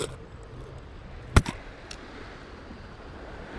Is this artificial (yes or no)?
no